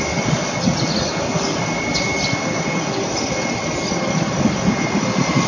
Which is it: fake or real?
real